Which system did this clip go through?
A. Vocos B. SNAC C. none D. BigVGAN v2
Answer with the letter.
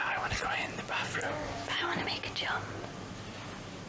C